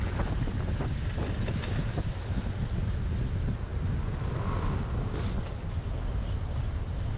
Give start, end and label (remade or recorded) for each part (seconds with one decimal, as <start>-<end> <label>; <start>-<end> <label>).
0.0-3.7 recorded; 3.7-4.8 remade; 4.8-7.2 recorded